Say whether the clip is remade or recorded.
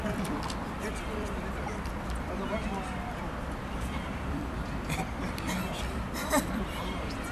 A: remade